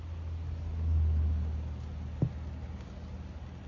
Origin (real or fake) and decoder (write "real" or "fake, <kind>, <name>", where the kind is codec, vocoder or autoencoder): real